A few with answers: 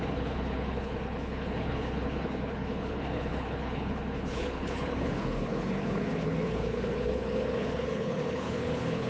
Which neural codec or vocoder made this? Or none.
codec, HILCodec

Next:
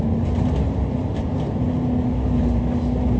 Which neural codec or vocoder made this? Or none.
none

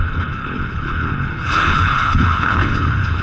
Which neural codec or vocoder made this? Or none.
codec, HILCodec